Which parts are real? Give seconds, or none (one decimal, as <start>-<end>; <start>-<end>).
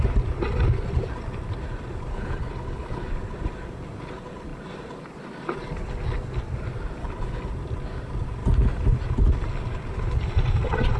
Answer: 0.0-2.1; 3.1-7.0; 7.5-11.0